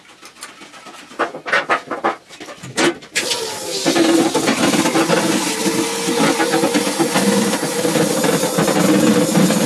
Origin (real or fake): real